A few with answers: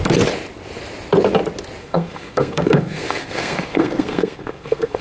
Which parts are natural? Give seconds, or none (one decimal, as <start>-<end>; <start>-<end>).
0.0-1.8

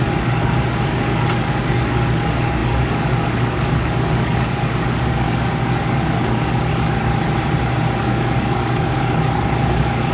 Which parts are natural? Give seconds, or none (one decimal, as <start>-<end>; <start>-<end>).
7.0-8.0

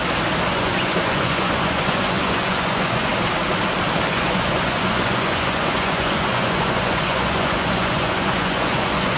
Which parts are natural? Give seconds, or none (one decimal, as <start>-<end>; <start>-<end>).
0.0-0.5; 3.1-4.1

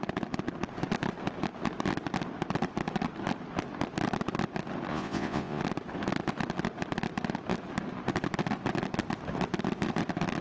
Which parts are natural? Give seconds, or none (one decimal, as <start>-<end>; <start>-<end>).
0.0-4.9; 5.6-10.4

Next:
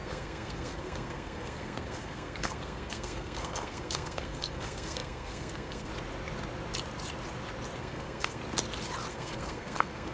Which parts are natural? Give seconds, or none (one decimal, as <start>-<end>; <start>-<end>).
5.9-7.8; 8.4-9.1

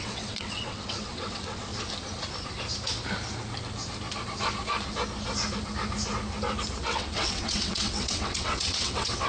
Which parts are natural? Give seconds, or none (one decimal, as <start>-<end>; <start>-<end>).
1.7-6.8

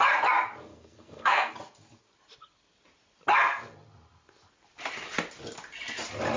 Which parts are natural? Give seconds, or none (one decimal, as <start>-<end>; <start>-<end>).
0.0-0.7; 1.5-6.4

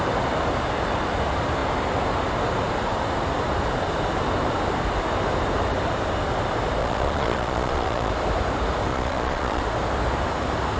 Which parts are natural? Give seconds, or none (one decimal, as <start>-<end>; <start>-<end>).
0.0-6.8; 8.1-8.9; 9.6-10.8